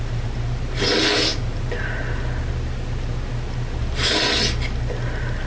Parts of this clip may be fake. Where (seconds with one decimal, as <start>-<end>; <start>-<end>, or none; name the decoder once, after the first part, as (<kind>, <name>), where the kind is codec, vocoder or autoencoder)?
none